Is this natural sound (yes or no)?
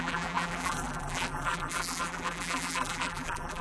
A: no